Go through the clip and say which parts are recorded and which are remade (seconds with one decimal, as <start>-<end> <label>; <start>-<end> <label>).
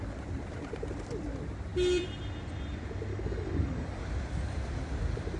0.0-3.1 recorded; 3.1-4.0 remade; 4.0-5.4 recorded